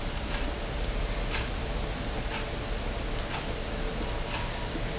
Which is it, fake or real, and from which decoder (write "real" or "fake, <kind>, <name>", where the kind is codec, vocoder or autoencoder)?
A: real